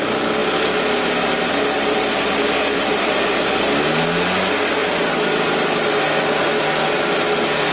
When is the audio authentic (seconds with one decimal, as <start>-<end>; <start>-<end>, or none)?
0.0-7.7